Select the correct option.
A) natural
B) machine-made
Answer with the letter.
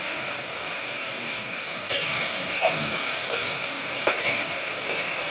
B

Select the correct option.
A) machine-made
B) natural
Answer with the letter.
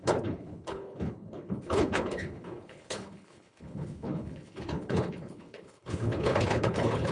A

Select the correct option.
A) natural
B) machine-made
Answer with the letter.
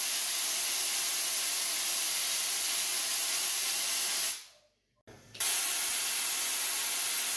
A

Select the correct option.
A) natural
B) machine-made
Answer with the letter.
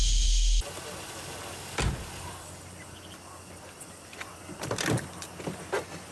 A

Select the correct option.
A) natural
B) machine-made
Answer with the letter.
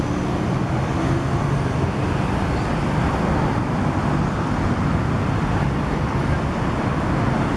A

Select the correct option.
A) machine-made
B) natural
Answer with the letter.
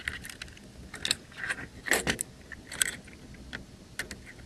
B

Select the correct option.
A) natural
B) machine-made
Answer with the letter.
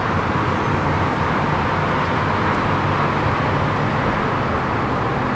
A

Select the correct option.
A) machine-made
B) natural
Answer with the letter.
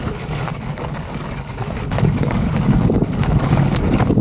A